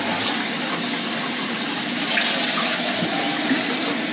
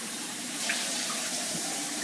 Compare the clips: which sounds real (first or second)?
first